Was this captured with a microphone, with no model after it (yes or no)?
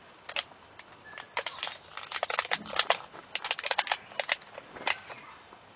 yes